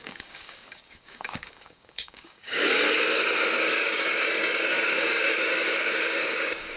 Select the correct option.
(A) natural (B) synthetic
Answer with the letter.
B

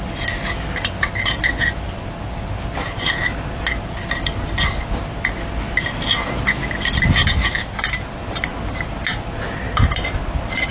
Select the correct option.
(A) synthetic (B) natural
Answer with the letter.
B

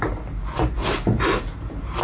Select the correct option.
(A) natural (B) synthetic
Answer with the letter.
A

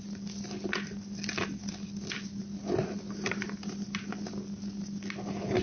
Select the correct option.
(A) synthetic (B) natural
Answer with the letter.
B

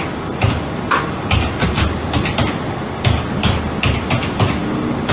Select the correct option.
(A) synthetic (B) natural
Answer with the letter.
B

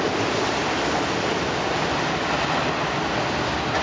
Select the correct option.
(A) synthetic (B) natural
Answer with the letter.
B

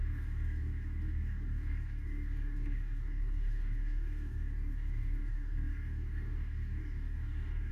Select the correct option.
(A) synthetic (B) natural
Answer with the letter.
A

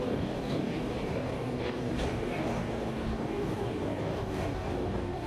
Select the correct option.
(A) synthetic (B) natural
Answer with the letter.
A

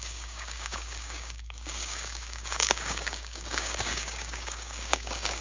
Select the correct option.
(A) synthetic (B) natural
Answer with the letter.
A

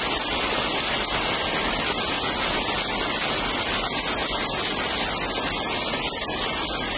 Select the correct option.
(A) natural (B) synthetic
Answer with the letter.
A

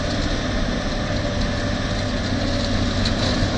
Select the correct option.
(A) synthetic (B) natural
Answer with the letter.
B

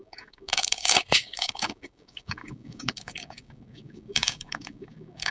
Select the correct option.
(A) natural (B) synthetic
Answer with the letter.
B